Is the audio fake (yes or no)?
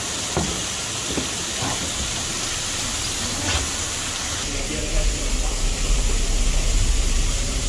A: no